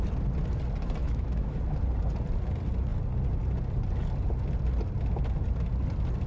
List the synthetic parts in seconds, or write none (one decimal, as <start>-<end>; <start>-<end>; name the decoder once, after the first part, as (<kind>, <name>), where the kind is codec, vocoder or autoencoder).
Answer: 1.0-1.6 (autoencoder, DAC-VAE)